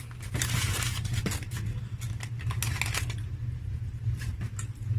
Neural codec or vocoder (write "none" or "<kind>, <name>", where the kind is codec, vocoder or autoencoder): none